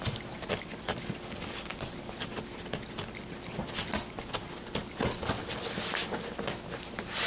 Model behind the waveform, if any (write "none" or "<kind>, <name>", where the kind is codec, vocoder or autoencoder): none